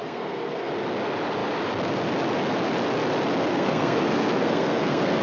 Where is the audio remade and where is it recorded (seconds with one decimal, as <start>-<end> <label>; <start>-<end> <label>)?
0.0-0.7 remade; 0.7-3.5 recorded; 3.5-5.2 remade

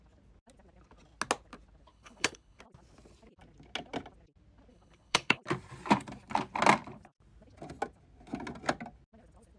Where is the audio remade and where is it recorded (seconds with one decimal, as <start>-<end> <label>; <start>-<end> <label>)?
0.0-1.9 recorded; 1.9-2.6 remade; 2.6-4.7 recorded; 4.7-5.4 remade; 5.4-9.6 recorded

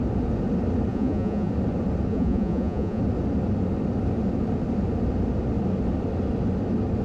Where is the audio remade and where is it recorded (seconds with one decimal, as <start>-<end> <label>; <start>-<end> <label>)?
0.0-0.9 recorded; 0.9-1.5 remade; 1.5-2.1 recorded; 2.1-3.0 remade; 3.0-7.0 recorded